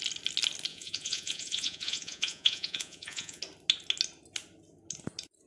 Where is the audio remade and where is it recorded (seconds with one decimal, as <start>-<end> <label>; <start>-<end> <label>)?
0.0-0.7 recorded; 0.7-3.4 remade; 3.4-5.5 recorded